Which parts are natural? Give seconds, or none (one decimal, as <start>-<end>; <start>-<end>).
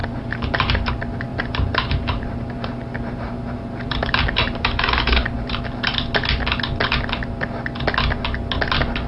0.9-1.3; 5.6-9.1